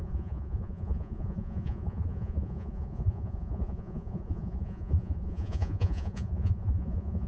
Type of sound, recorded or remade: remade